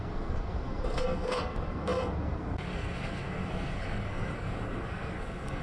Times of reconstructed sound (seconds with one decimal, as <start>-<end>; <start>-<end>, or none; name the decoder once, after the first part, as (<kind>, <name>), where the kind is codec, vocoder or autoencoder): 0.0-5.6 (codec, SNAC)

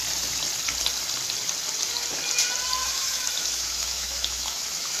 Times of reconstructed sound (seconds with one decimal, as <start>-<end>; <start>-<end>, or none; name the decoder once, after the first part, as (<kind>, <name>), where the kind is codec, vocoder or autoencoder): 2.8-5.0 (autoencoder, DAC-VAE)

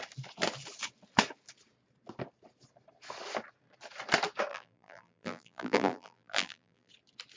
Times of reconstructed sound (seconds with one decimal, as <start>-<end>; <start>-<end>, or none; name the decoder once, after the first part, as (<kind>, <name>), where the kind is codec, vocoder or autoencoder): 4.5-6.9 (vocoder, BigVGAN v2)

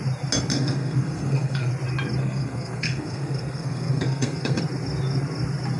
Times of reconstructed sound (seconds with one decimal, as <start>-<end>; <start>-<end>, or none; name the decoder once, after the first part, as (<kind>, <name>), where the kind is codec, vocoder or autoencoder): 0.5-1.7 (codec, SNAC); 2.2-4.6

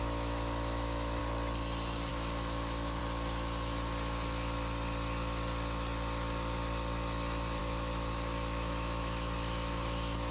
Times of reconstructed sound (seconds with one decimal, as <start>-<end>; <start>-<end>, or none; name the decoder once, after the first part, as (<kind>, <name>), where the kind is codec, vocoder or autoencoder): 0.0-1.2 (autoencoder, DAC-VAE); 2.1-3.0; 7.6-10.3

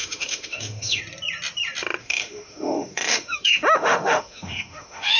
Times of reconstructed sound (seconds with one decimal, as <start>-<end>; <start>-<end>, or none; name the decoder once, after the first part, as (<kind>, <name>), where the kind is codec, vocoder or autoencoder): 0.0-1.0 (autoencoder, DAC-VAE); 2.0-5.2

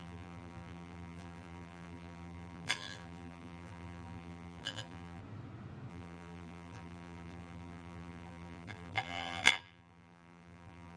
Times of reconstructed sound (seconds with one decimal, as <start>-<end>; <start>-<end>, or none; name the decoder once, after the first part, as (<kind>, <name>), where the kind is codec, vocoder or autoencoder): 0.0-5.2 (vocoder, BigVGAN v2); 5.9-11.0